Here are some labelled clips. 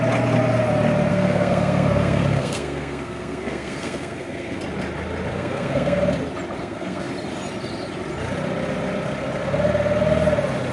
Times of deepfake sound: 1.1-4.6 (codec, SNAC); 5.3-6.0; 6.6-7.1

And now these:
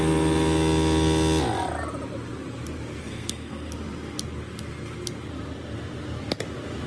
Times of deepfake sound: 3.0-3.7 (codec, SNAC)

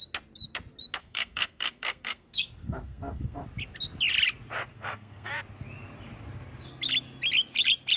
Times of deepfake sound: 1.0-3.4 (codec, SNAC); 4.7-5.3

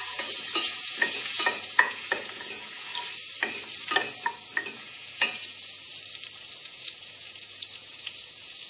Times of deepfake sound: 0.0-2.9 (vocoder, Vocos); 4.7-5.9; 6.6-8.7

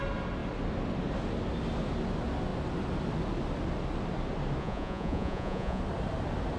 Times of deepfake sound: 4.6-5.8 (vocoder, Vocos)

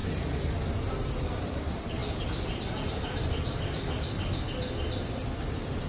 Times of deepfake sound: none

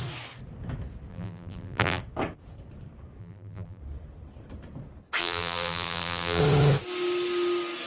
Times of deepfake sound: 1.1-2.0 (vocoder, BigVGAN v2); 3.2-3.8; 5.2-6.4